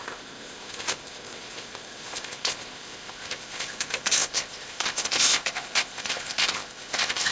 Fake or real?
fake